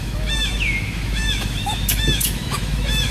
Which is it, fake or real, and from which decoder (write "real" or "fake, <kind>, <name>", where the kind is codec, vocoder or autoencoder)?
fake, autoencoder, DAC-VAE